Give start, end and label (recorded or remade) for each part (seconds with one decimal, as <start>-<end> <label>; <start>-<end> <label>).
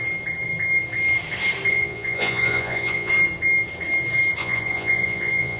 0.0-1.7 recorded; 1.7-3.1 remade; 3.1-4.4 recorded; 4.4-5.6 remade